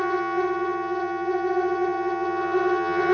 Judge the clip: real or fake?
fake